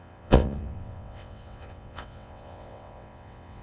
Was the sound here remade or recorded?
remade